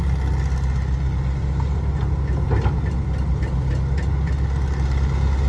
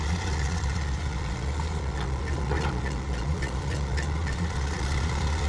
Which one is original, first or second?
first